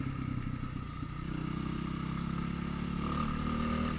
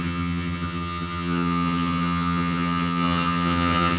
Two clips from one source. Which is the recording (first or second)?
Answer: first